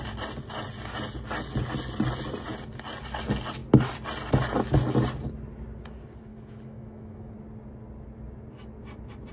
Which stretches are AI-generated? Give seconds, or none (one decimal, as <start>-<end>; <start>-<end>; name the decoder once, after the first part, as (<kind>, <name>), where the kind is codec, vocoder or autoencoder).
6.3-7.3 (autoencoder, DAC-VAE)